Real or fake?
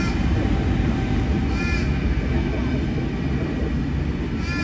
real